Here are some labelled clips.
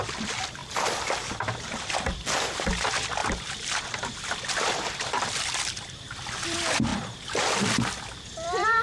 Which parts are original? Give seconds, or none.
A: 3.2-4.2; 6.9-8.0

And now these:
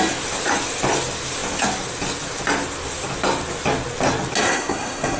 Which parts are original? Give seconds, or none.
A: 0.0-4.4

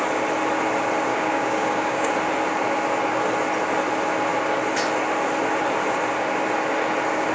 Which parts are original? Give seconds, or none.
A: 0.0-1.1; 2.1-7.3

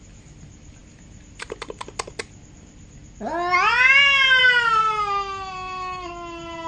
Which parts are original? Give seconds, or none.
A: 0.0-6.7

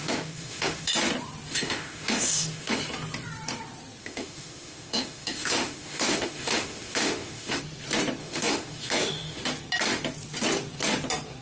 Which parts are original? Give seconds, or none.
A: 0.9-1.5; 2.8-4.0; 7.6-8.2; 9.4-11.4

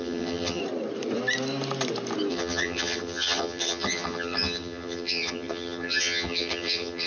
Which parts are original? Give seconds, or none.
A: 0.6-2.3

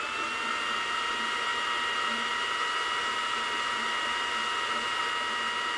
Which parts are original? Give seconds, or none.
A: 0.0-5.8

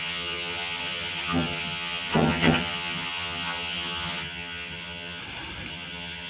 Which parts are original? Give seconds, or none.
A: 5.2-5.7